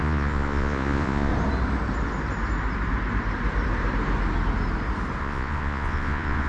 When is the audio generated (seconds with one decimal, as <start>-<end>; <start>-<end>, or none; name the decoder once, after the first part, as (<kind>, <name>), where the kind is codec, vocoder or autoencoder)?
0.0-1.3 (vocoder, Vocos); 5.2-6.5